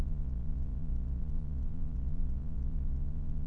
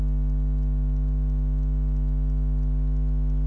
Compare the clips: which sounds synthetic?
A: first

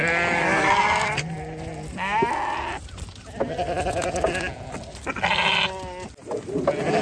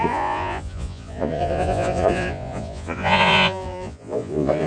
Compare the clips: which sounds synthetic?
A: second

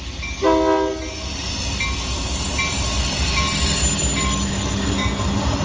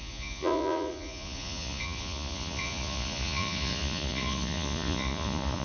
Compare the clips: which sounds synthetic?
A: second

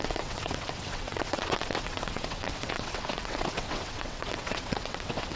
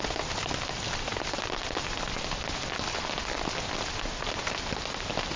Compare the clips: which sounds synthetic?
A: first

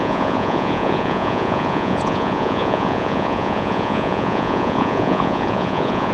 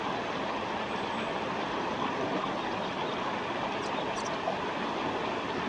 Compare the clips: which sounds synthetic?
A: first